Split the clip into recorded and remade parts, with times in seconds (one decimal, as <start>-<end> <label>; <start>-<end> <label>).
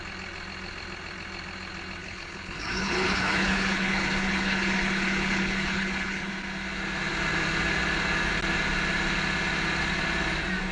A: 0.0-2.0 recorded; 2.0-6.3 remade; 6.3-10.7 recorded